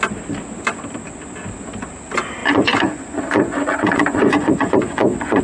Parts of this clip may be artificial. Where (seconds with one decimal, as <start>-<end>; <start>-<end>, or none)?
2.4-5.4

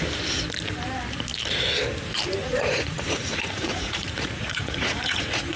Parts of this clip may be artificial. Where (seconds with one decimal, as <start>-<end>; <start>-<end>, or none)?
2.4-5.6

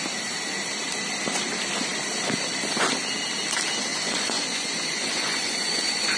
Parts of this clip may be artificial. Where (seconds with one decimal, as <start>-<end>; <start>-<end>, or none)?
3.9-6.2

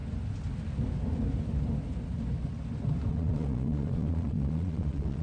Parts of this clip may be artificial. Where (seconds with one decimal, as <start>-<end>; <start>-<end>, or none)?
3.1-5.2

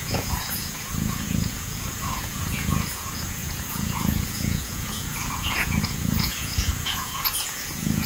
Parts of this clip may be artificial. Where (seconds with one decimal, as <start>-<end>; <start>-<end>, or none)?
0.0-8.1

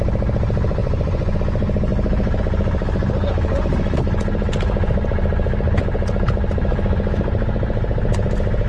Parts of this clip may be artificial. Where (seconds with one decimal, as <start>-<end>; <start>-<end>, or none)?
0.8-1.4

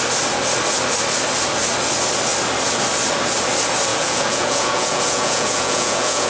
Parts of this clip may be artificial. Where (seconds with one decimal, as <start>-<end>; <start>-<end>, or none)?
3.9-6.3